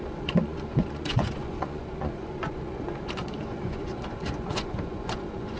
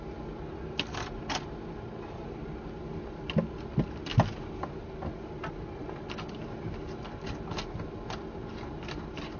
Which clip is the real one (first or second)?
second